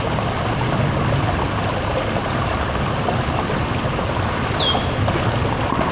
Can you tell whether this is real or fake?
real